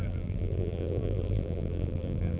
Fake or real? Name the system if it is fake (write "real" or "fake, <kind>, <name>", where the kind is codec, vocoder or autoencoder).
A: fake, vocoder, BigVGAN v2